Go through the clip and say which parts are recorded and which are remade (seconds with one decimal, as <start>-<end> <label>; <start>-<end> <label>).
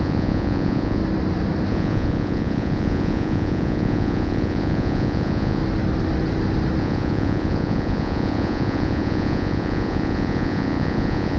0.0-1.0 remade; 1.0-1.7 recorded; 1.7-5.6 remade; 5.6-6.8 recorded; 6.8-11.4 remade